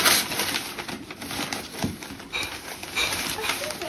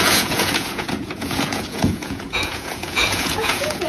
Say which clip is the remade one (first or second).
second